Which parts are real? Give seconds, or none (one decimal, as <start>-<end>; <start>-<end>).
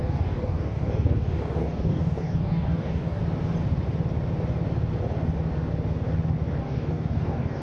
3.2-6.6